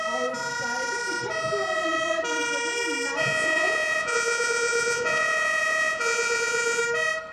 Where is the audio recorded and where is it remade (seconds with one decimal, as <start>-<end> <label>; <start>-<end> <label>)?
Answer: 0.0-3.2 recorded; 3.2-6.8 remade; 6.8-7.3 recorded